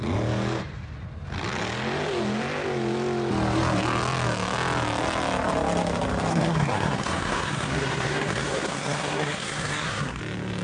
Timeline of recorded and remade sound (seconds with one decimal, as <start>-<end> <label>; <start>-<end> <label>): 0.0-6.3 recorded; 6.3-10.2 remade; 10.2-10.6 recorded